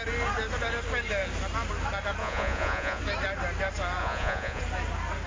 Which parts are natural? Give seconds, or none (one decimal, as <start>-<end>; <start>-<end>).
0.0-2.2; 3.0-4.0; 4.6-5.3